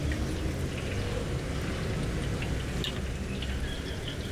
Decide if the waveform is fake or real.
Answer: real